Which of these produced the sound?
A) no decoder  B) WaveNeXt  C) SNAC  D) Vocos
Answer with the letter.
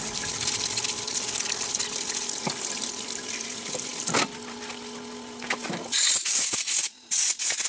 A